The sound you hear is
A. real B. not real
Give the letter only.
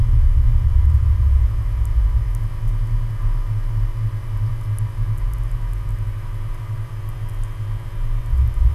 A